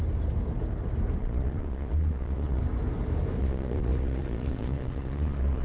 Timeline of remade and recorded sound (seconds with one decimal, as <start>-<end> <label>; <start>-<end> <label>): 0.0-1.2 recorded; 1.2-2.6 remade; 2.6-3.4 recorded; 3.4-5.6 remade